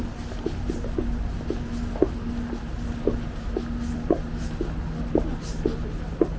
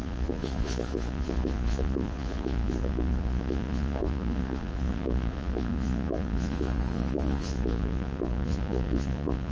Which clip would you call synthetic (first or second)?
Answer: second